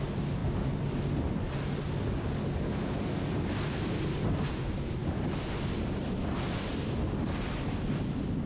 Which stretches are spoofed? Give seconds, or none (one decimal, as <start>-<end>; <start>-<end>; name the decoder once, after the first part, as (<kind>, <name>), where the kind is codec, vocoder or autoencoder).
none